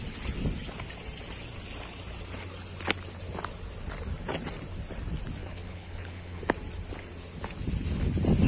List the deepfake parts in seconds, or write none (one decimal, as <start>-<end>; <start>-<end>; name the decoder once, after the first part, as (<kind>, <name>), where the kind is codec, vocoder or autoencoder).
5.4-6.4 (codec, HILCodec)